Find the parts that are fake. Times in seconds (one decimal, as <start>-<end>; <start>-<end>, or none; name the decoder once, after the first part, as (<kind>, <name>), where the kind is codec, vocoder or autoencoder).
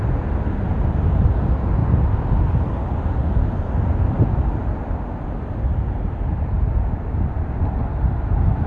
none